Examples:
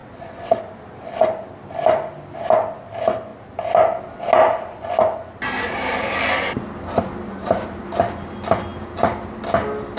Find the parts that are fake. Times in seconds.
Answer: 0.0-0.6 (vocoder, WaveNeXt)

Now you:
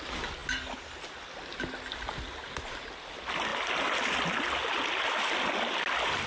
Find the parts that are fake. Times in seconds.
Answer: none

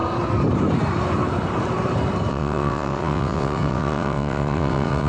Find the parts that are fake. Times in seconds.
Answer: 2.3-5.1 (vocoder, WaveNeXt)

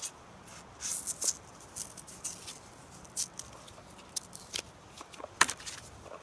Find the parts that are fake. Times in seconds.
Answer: none

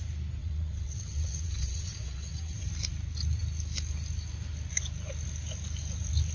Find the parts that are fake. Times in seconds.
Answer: 0.4-2.7 (vocoder, WaveNeXt)

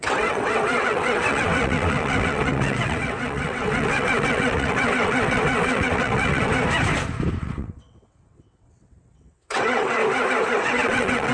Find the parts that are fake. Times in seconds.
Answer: 0.0-6.5 (vocoder, WaveNeXt); 7.4-10.0; 10.5-11.3

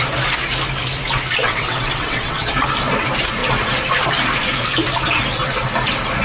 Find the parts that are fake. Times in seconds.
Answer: 1.4-2.5 (vocoder, WaveNeXt)